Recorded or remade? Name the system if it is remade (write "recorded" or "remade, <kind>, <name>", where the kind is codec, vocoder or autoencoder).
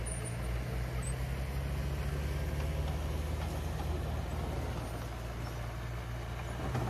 recorded